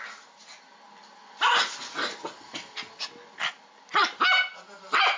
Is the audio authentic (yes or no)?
yes